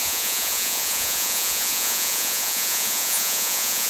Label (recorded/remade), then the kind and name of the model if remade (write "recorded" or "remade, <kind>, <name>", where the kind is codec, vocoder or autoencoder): remade, vocoder, Vocos